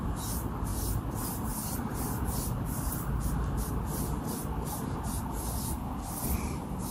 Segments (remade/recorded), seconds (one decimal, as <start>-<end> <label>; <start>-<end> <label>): 0.0-6.9 recorded